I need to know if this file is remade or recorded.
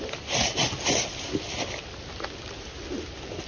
recorded